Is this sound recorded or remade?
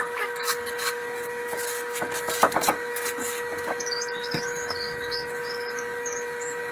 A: remade